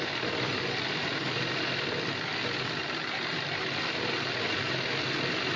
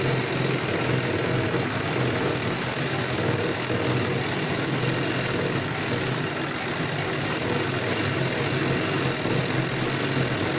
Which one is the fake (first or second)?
first